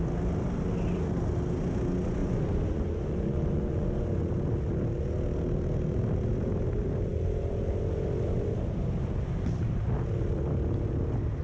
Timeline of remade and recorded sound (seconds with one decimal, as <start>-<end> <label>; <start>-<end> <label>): 0.0-2.2 recorded; 2.2-4.3 remade; 4.3-11.4 recorded